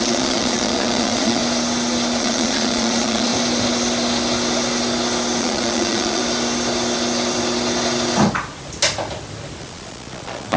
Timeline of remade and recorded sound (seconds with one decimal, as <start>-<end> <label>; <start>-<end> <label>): 0.0-1.4 remade; 1.4-2.2 recorded; 2.2-3.3 remade; 3.3-5.4 recorded; 5.4-6.2 remade; 6.2-9.6 recorded; 9.6-10.6 remade